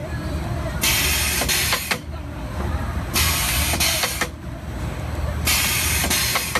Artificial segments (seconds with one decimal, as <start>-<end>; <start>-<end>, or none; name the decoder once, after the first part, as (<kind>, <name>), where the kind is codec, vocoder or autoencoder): 0.0-4.0 (vocoder, BigVGAN v2)